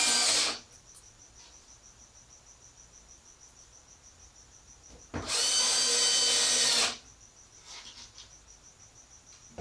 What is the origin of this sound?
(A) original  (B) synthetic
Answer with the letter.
A